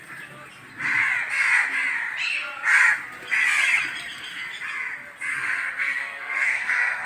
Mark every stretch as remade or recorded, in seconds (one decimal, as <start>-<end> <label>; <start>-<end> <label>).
0.0-5.3 recorded; 5.3-7.1 remade